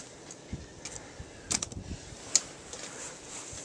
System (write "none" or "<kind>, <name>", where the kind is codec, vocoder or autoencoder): none